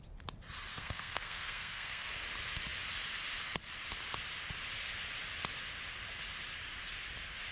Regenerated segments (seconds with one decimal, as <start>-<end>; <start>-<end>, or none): 0.7-2.1